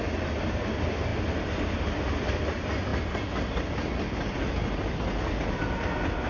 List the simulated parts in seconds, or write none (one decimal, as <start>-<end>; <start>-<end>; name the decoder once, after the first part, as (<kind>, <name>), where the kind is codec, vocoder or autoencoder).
none